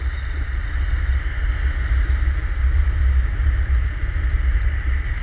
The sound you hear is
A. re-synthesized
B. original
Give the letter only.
B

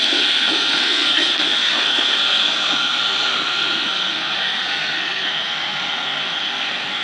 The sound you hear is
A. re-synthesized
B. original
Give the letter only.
A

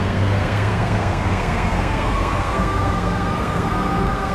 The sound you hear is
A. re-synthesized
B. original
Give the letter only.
A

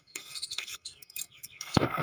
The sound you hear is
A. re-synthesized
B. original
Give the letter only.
A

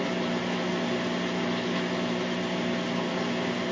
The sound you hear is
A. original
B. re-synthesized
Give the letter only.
A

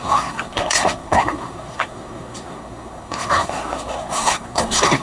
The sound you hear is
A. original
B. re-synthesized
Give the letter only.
B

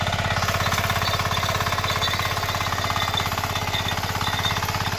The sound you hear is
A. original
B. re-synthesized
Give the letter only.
A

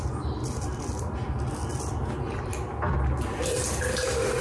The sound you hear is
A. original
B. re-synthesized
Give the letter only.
A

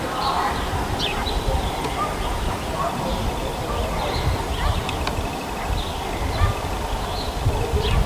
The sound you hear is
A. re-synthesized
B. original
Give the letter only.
B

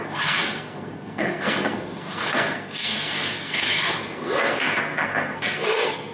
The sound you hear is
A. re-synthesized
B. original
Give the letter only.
A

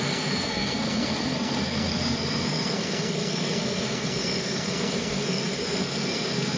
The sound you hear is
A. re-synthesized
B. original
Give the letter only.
A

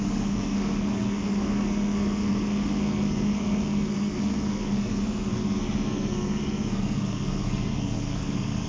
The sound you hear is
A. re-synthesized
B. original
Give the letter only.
A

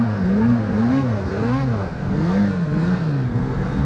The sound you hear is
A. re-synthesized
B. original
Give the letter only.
A